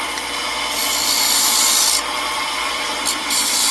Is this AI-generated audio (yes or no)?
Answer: yes